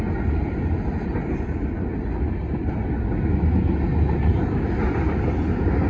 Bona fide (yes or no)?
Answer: yes